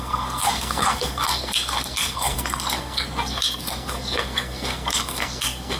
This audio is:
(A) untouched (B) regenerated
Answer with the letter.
B